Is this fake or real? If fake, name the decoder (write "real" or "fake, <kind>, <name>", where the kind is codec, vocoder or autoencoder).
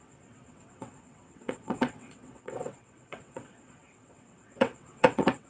fake, vocoder, WaveNeXt